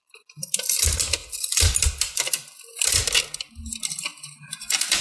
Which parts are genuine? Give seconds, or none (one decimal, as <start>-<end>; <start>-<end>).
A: 0.0-1.2; 3.5-4.1

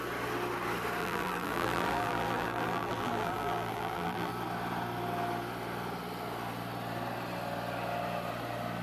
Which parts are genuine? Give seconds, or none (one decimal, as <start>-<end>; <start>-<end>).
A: 0.0-1.0; 4.3-8.8

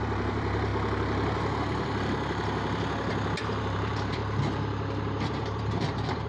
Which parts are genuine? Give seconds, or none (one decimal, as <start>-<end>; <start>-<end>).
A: 0.7-3.4; 4.2-5.2

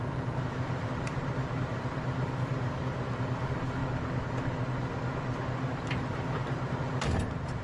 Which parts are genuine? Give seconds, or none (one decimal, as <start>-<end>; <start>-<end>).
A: 3.8-5.7

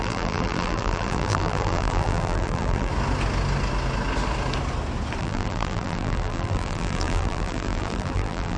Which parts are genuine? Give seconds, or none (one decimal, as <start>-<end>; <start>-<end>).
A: 2.9-5.2